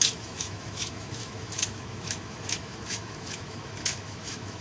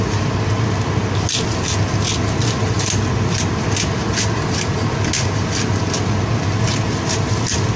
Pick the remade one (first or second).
first